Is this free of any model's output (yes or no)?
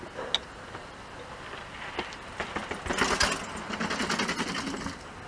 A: yes